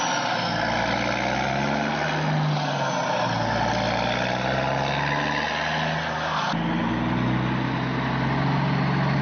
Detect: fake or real real